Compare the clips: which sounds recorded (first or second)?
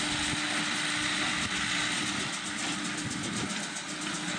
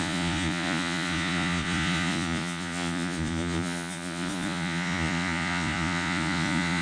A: first